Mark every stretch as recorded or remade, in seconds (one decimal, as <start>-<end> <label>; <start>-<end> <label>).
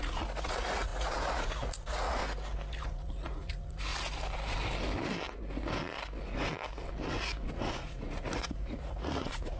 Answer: 0.0-2.2 remade; 2.2-2.8 recorded; 2.8-3.9 remade; 3.9-7.5 recorded; 7.5-9.6 remade